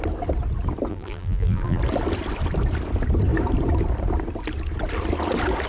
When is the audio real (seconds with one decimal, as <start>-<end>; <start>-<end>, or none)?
0.0-0.9; 1.8-5.7